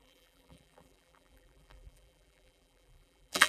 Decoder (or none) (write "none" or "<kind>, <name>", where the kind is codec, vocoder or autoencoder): vocoder, BigVGAN v2